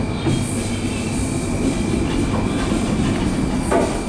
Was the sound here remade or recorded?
recorded